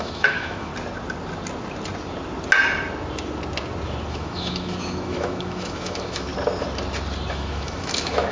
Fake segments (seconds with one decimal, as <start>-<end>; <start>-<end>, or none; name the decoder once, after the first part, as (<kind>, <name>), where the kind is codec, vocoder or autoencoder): 0.0-0.7 (autoencoder, DAC-VAE); 4.1-6.3; 7.3-8.3